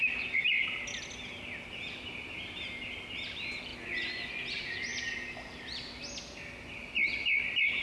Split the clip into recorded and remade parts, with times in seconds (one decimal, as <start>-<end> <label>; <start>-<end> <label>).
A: 0.0-3.7 recorded; 3.7-4.3 remade; 4.3-7.8 recorded